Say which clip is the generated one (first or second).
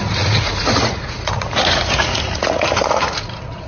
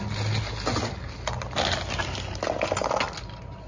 first